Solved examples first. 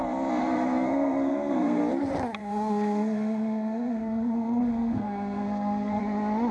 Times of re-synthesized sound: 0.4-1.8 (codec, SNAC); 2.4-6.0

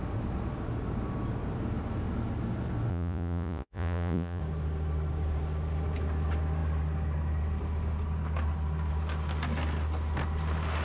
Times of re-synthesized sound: 2.9-4.4 (vocoder, Vocos)

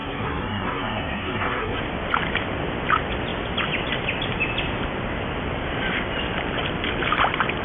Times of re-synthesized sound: 0.0-1.8 (codec, SNAC)

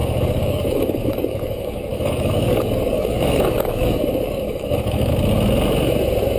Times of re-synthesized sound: 0.0-5.1 (codec, DAC)

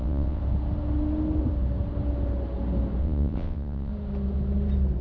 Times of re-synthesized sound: 0.0-0.4 (vocoder, WaveNeXt); 3.0-3.9

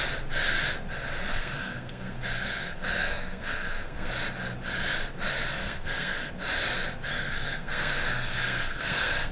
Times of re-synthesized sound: 1.3-4.1 (codec, SNAC); 5.6-6.3; 7.1-9.3

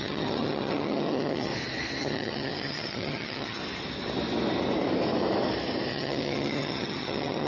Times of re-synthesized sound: 0.0-1.5 (vocoder, HiFi-GAN); 2.0-3.6; 5.9-7.5